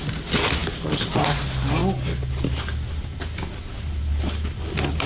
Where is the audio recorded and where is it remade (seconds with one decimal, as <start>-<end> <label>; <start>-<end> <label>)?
0.0-5.1 recorded